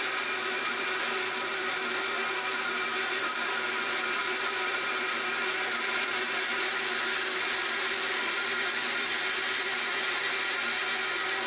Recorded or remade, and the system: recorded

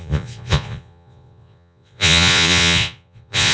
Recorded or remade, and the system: remade, vocoder, Vocos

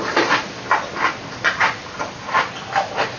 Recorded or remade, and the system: recorded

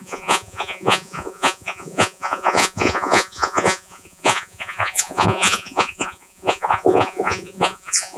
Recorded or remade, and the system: remade, vocoder, Vocos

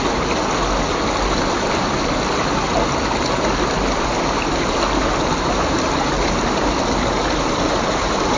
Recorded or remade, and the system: recorded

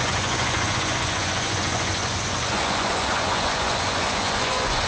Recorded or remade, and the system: remade, vocoder, Vocos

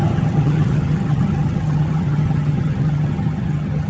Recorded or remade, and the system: remade, vocoder, HiFi-GAN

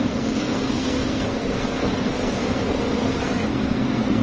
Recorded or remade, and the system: remade, codec, SNAC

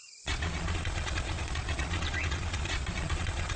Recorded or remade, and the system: remade, vocoder, Vocos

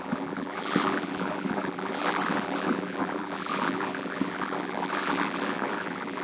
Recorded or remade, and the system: remade, vocoder, BigVGAN v2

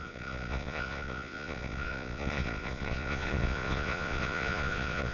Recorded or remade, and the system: remade, vocoder, Vocos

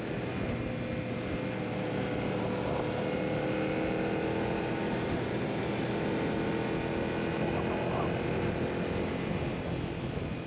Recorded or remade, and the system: recorded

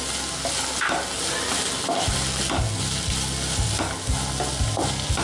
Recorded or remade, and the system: recorded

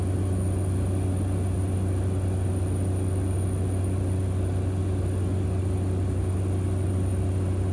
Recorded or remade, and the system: recorded